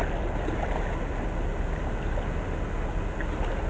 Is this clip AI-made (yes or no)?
no